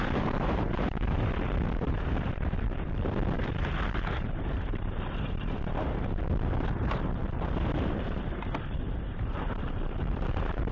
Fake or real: fake